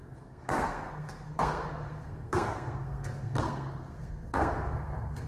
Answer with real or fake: fake